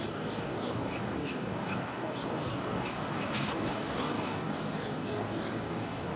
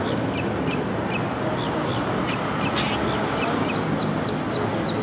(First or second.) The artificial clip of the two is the first